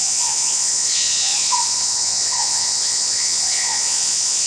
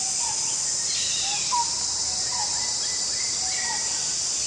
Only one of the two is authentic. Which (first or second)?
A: second